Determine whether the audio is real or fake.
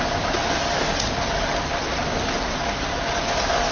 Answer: real